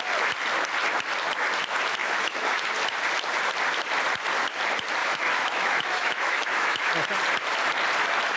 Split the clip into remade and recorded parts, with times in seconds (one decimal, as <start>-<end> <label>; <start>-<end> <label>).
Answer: 0.0-2.0 recorded; 2.0-2.6 remade; 2.6-5.0 recorded; 5.0-6.9 remade; 6.9-8.4 recorded

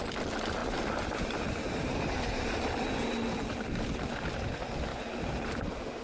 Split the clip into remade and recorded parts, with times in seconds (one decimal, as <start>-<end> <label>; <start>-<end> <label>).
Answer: 0.0-6.0 recorded

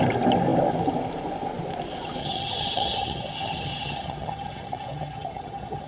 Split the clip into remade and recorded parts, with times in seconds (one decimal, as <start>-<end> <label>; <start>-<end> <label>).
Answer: 0.0-2.2 recorded; 2.2-5.9 remade

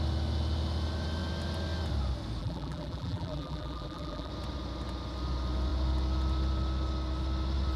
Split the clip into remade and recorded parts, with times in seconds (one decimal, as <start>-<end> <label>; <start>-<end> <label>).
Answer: 0.0-2.4 recorded; 2.4-4.3 remade; 4.3-7.8 recorded

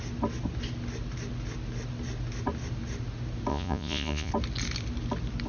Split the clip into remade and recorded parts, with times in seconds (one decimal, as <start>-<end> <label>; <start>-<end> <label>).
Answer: 0.0-3.5 recorded; 3.5-4.3 remade; 4.3-5.5 recorded

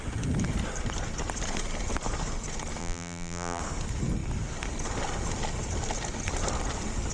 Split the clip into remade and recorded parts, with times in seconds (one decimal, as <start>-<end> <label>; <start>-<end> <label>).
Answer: 0.0-2.8 recorded; 2.8-3.6 remade; 3.6-7.1 recorded